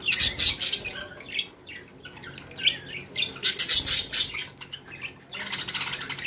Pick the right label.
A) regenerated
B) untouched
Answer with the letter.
B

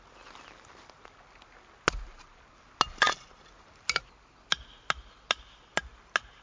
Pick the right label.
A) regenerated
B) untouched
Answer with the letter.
B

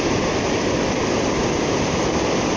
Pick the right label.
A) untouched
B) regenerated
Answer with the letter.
B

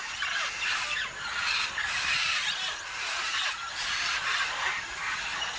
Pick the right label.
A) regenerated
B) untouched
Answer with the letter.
B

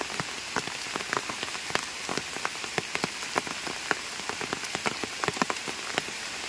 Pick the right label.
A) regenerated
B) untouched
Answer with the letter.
B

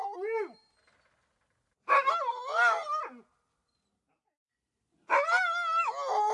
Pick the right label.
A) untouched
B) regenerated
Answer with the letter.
A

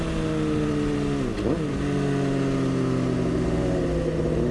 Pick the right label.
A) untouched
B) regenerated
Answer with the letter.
A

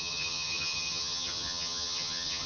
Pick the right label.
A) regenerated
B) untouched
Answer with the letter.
A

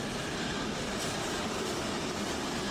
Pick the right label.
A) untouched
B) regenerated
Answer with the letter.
A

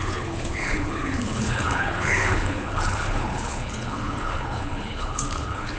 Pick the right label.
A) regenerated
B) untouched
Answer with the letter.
A